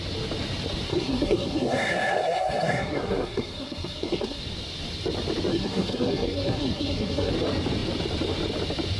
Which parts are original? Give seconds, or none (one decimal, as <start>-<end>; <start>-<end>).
0.0-0.9; 4.4-5.5; 7.3-9.0